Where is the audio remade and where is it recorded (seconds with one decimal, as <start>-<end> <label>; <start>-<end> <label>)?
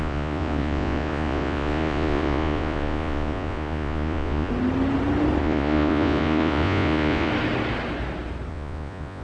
0.0-4.5 remade; 4.5-5.4 recorded; 5.4-7.3 remade; 7.3-8.5 recorded; 8.5-9.2 remade